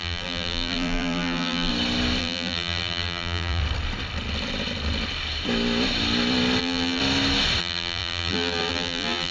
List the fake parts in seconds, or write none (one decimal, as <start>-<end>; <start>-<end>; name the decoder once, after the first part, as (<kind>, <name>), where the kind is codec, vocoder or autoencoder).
0.0-1.7 (vocoder, BigVGAN v2); 2.2-3.6; 6.6-7.0; 7.6-9.3